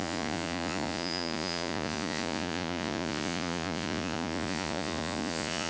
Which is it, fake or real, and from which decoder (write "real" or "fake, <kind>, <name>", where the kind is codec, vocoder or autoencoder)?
fake, vocoder, Vocos